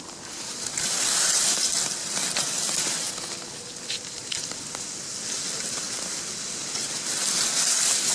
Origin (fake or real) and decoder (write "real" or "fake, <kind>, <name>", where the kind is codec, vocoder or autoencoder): real